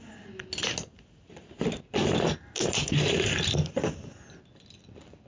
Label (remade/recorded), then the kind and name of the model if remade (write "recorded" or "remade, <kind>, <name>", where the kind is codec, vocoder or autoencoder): recorded